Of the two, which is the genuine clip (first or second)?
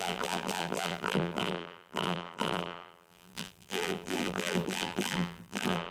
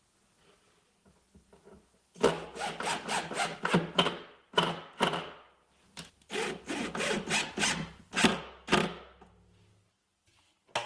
second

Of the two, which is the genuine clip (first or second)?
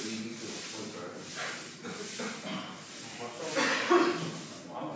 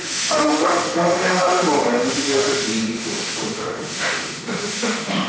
first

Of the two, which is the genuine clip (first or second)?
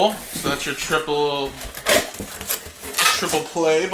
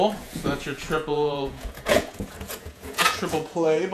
first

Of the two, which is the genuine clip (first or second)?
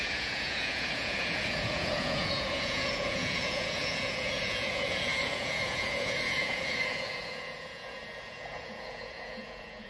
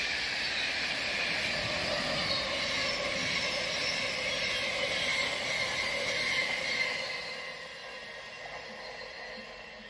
second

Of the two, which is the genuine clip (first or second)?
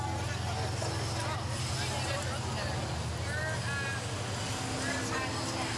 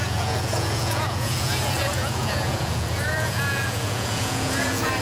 first